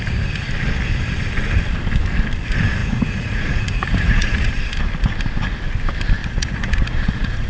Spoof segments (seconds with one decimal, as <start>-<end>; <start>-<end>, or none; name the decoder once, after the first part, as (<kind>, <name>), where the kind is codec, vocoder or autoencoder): 2.8-4.5 (vocoder, Vocos); 6.2-7.5